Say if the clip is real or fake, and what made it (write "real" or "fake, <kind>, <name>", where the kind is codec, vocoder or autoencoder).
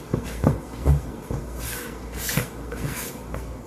fake, codec, SNAC